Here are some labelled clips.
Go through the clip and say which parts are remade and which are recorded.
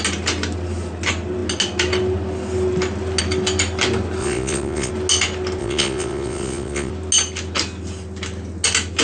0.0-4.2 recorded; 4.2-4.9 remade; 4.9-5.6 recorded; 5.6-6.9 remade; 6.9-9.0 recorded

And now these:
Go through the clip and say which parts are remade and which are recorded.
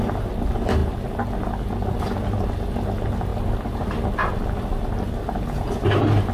0.0-3.3 recorded; 3.3-4.0 remade; 4.0-6.3 recorded